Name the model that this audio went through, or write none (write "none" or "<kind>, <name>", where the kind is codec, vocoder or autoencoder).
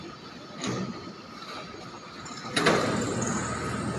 none